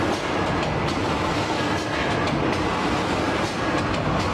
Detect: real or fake real